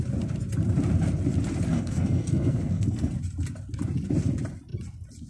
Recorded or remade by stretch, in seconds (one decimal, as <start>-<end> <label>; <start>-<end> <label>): 0.0-1.7 recorded; 1.7-3.1 remade; 3.1-5.3 recorded